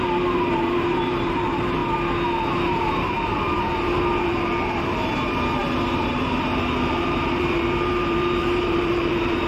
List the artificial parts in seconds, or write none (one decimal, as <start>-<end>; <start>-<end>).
0.0-1.8; 2.7-9.5